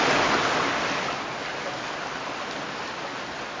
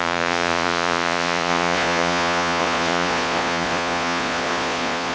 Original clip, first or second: first